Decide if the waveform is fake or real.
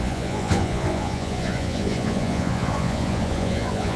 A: fake